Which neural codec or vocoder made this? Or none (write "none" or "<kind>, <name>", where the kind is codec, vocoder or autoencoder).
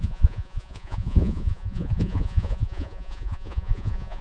vocoder, Vocos